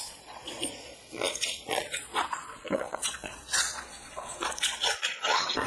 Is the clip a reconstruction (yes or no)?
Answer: yes